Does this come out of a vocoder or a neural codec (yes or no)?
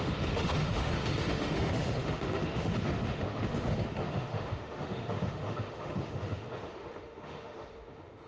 yes